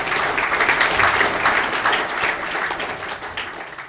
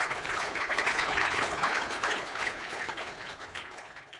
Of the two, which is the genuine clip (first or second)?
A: first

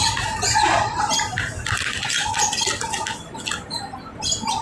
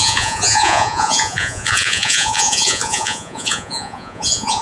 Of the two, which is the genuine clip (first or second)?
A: first